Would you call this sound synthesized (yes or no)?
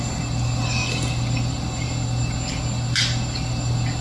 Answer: no